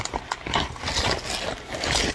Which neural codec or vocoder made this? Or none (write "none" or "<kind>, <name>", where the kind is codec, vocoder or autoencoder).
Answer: none